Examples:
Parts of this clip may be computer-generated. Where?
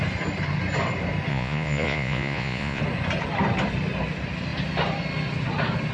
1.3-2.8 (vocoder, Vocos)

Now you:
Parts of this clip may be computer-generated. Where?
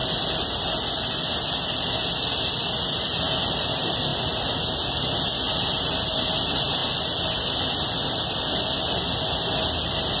none